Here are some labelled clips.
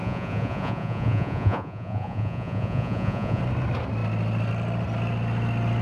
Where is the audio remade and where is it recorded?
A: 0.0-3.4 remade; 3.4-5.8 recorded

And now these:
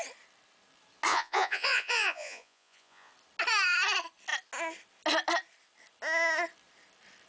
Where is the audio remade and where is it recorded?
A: 0.0-1.1 recorded; 1.1-3.1 remade; 3.1-7.3 recorded

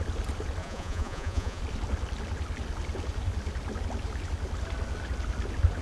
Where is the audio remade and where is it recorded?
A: 0.0-0.6 recorded; 0.6-1.6 remade; 1.6-5.8 recorded

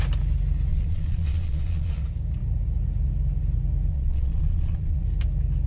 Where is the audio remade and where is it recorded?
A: 0.0-0.7 recorded; 0.7-2.0 remade; 2.0-3.9 recorded; 3.9-5.0 remade; 5.0-5.7 recorded